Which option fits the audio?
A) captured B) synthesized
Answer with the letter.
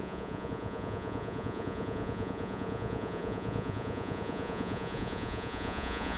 B